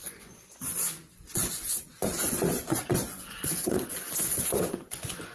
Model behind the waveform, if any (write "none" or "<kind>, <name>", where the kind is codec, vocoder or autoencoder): vocoder, Vocos